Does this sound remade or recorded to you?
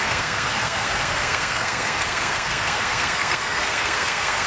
remade